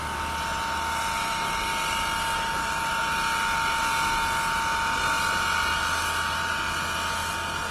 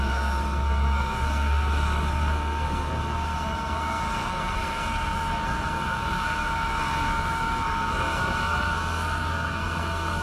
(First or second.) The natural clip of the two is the first